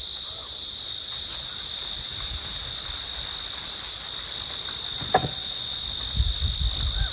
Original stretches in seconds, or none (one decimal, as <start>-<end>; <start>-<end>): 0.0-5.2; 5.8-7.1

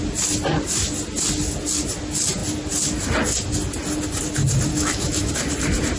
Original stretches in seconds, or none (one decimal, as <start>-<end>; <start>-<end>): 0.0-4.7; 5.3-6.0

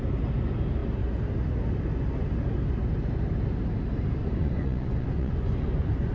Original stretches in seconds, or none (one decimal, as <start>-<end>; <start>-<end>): 0.0-4.2

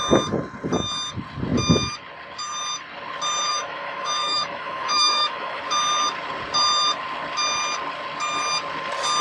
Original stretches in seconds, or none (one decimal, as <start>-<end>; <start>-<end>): 0.0-3.5; 5.6-9.2